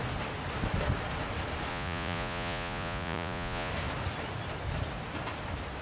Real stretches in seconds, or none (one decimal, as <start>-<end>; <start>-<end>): 0.0-1.7; 3.7-5.8